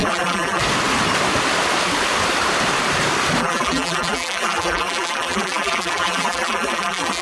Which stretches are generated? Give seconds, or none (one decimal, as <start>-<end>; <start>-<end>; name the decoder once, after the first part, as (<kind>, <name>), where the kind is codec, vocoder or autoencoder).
0.0-0.6 (vocoder, BigVGAN v2); 3.4-7.2